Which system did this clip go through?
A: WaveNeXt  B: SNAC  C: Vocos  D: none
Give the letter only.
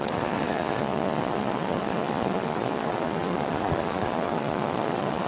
C